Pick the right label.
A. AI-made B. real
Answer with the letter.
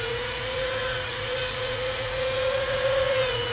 A